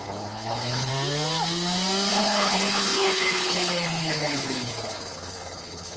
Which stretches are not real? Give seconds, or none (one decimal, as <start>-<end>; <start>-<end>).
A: 0.0-0.9; 2.1-6.0